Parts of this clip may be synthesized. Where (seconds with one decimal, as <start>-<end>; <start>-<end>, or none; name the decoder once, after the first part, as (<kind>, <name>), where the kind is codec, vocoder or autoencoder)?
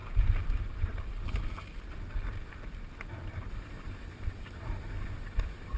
none